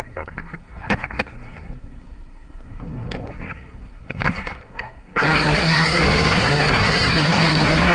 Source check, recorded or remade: remade